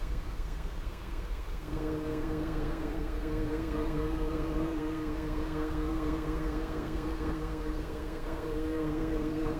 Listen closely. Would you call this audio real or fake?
fake